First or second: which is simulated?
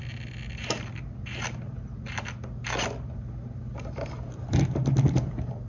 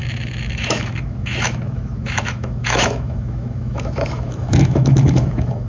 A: second